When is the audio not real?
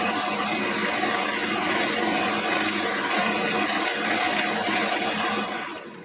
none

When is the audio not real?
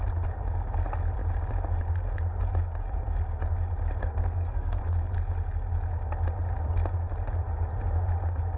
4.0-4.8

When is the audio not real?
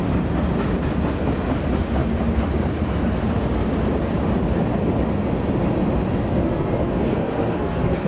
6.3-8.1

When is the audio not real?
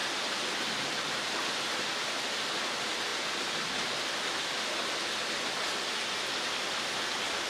none